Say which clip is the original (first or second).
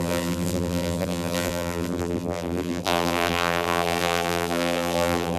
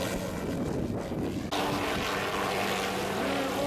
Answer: second